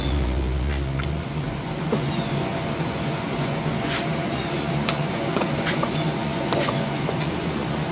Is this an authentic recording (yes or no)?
no